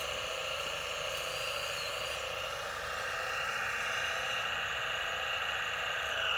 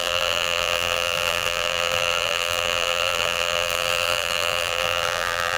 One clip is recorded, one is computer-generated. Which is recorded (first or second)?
first